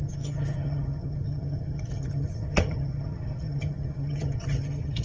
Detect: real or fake fake